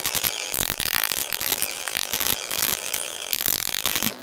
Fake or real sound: fake